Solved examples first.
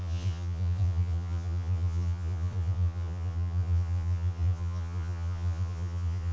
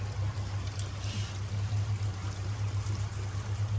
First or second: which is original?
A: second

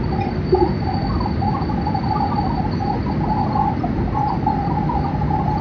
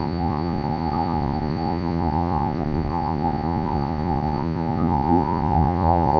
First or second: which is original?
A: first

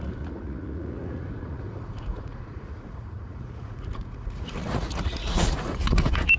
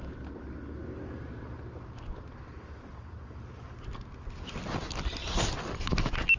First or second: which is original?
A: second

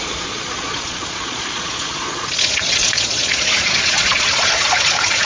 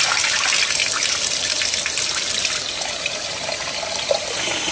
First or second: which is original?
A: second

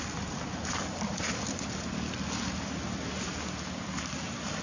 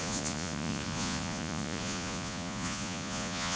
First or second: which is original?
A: first